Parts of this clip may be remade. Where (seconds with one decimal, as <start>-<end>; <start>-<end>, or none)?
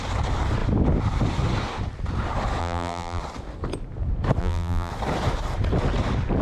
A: 2.6-3.2; 4.4-4.9